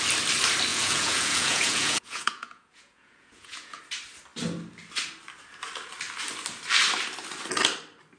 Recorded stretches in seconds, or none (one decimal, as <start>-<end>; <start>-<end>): 0.0-0.7; 3.8-8.2